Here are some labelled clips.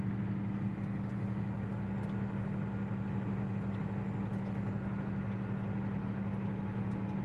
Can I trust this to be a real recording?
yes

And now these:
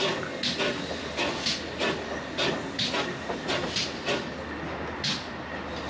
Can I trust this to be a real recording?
yes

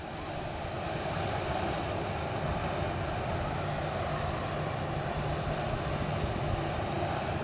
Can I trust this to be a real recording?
yes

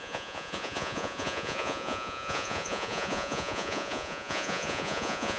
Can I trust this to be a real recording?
no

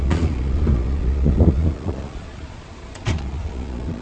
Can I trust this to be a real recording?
no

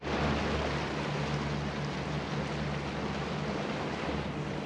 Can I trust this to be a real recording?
yes